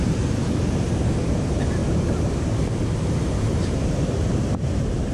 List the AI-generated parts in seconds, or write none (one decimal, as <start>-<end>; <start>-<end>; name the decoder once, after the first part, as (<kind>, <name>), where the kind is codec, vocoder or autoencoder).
0.0-1.8 (vocoder, BigVGAN v2); 3.1-5.1